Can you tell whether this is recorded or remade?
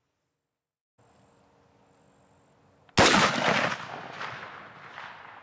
recorded